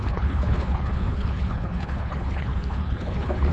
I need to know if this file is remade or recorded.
remade